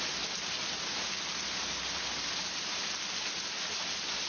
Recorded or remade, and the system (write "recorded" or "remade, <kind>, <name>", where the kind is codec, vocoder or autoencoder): recorded